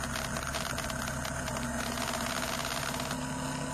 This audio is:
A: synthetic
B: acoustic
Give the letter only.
B